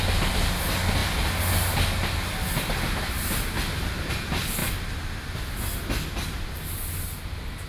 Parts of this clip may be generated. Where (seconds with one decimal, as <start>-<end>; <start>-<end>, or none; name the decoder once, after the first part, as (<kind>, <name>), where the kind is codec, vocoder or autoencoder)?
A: none